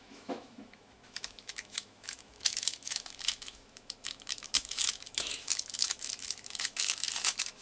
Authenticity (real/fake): fake